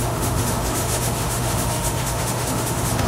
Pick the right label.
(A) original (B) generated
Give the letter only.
B